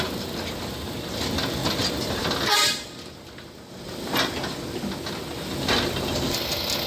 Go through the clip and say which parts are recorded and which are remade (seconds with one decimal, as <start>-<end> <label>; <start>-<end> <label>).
0.0-6.9 recorded